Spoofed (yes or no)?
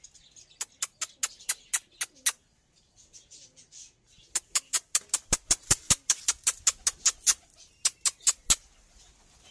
no